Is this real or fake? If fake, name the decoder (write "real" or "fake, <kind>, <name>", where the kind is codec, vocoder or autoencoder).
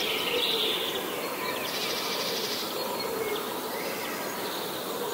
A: real